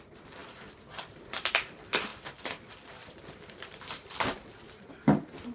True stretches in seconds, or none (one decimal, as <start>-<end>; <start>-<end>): 0.0-0.4; 1.5-3.0; 4.9-5.5